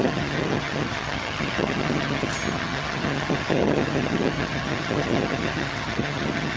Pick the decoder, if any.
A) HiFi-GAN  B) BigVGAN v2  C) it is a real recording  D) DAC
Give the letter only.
A